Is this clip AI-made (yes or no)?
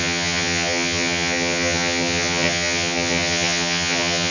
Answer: yes